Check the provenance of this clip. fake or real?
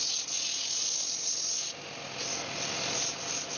real